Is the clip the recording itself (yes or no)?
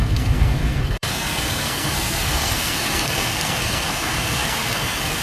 no